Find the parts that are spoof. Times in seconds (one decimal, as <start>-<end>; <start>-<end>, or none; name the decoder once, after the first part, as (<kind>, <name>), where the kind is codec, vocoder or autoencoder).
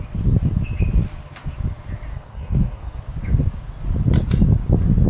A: 2.1-3.0 (codec, SNAC)